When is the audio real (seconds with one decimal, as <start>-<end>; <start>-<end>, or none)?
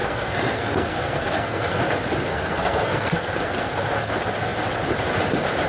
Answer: 1.8-2.3; 4.1-5.7